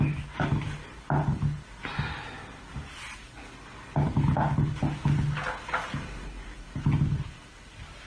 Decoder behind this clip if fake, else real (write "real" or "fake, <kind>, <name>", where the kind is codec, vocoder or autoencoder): real